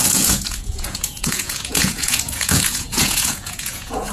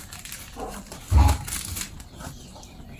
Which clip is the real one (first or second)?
second